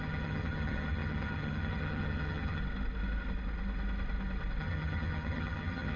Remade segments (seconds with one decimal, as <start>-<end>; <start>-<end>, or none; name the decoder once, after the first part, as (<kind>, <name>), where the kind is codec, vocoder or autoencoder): 0.0-2.6 (vocoder, HiFi-GAN); 4.6-6.0